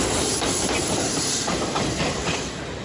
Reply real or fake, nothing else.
fake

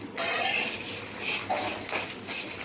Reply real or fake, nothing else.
real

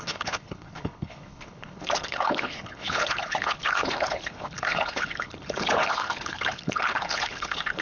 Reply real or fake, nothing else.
fake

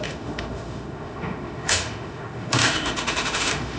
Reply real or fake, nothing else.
fake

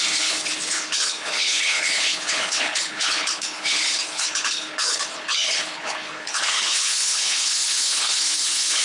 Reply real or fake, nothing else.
fake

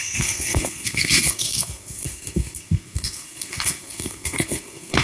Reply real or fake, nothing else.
fake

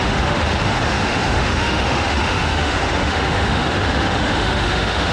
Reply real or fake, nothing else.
fake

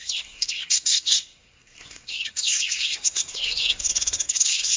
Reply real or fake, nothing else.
fake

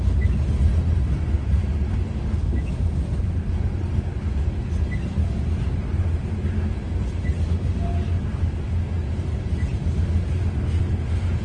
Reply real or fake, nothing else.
real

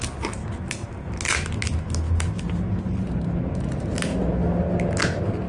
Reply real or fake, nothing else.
real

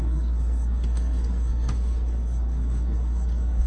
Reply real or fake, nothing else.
fake